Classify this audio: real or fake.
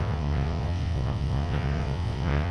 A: fake